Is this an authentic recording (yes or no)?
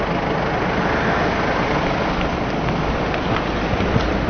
yes